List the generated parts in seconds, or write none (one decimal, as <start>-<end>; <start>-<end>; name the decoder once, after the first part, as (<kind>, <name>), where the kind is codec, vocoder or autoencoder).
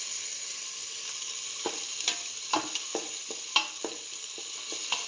none